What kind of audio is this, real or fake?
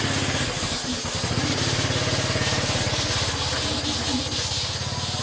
real